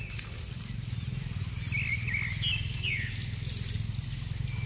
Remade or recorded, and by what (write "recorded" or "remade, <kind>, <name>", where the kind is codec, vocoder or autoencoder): recorded